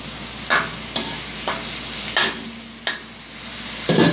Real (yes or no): yes